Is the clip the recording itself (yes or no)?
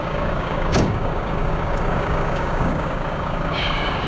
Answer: no